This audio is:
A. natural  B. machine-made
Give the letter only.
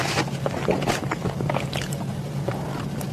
A